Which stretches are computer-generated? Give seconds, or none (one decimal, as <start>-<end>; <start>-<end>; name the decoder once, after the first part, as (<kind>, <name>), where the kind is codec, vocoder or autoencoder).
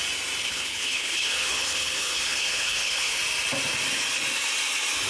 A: 0.4-3.2 (codec, HILCodec)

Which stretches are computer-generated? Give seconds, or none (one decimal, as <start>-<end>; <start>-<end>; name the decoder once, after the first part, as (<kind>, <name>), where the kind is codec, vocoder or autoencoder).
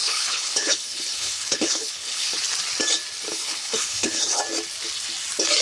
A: 0.0-2.4 (codec, HILCodec); 3.3-4.4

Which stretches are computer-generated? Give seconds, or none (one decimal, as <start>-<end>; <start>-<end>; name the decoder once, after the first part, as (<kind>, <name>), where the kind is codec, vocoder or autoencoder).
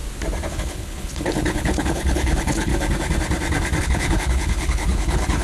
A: 0.5-2.7 (codec, HILCodec); 3.8-5.4